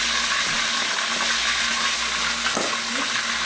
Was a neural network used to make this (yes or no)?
no